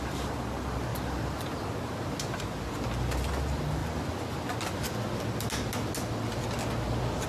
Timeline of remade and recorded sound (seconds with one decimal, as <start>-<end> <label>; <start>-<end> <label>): 0.0-7.3 recorded